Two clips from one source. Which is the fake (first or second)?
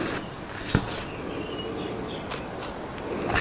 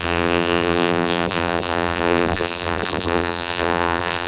second